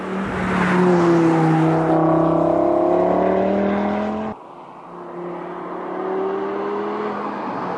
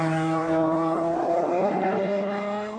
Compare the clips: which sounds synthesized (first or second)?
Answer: second